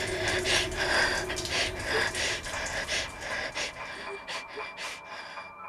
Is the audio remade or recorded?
recorded